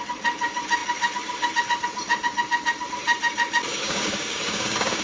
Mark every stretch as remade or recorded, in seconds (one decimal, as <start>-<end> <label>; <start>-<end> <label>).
0.0-3.7 recorded; 3.7-5.0 remade